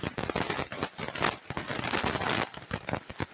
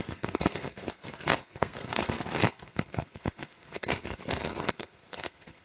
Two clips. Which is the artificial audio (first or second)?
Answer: second